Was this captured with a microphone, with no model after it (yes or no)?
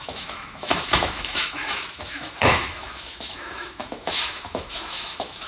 no